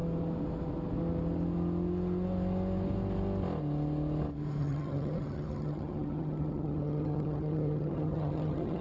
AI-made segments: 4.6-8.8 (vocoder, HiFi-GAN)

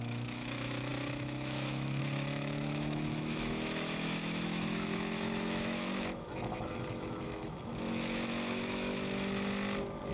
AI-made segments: 0.0-8.9 (autoencoder, DAC-VAE)

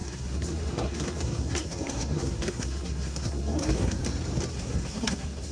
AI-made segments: 0.0-4.0 (codec, SNAC); 4.5-5.5

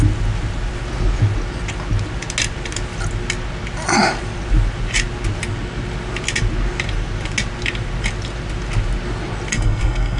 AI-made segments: 9.5-10.2 (codec, SNAC)

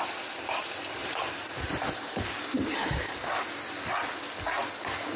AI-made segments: 1.0-3.2 (vocoder, BigVGAN v2)

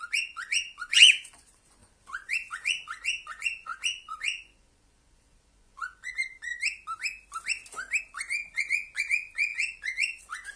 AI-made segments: 0.0-6.5 (vocoder, Vocos); 8.0-10.6